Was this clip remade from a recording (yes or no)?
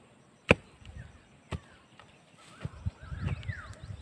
no